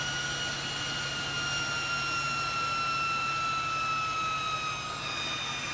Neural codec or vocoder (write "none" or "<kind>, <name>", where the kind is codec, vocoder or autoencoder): none